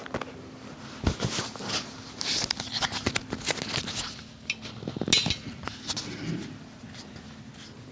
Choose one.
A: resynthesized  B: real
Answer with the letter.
B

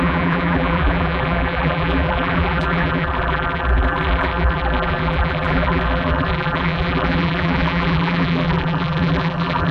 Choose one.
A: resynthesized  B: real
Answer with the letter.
A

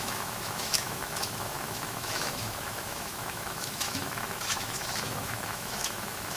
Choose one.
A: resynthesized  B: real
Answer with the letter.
A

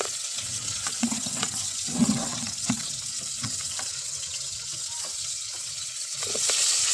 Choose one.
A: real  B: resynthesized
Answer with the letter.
B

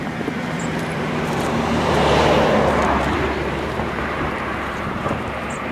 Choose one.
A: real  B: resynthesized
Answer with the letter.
B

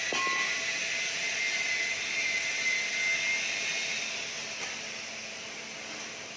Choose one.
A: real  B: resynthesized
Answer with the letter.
A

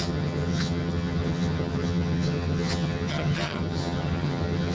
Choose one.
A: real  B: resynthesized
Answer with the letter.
B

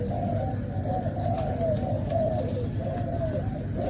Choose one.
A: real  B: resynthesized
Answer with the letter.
A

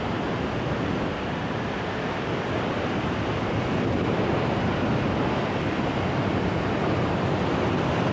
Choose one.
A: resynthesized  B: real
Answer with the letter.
B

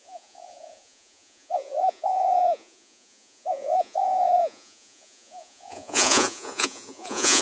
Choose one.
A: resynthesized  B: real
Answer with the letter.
A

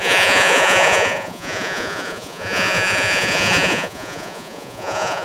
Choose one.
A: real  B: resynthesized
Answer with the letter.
B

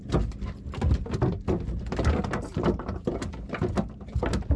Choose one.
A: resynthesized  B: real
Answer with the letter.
B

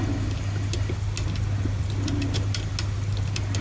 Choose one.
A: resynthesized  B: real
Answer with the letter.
B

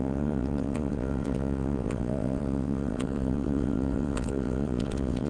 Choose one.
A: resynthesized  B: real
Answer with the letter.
A